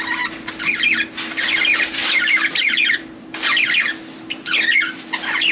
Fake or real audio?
real